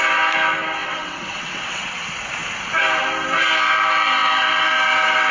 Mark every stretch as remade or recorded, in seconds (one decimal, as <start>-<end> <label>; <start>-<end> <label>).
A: 0.0-0.8 recorded; 0.8-1.8 remade; 1.8-5.3 recorded